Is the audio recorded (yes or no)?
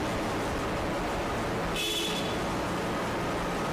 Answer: yes